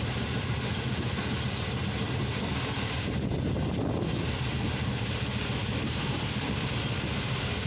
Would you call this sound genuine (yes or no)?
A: yes